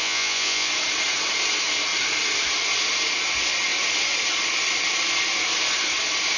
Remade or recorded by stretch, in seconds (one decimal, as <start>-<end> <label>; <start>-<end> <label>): 0.0-0.7 remade; 0.7-6.4 recorded